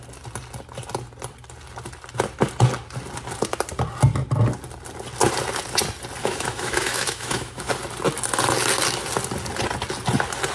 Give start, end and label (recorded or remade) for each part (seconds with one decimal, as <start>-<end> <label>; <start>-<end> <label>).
0.0-6.2 recorded; 6.2-7.7 remade; 7.7-10.5 recorded